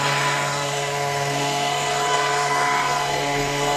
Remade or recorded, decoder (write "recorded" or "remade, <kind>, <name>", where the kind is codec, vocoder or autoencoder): remade, codec, SNAC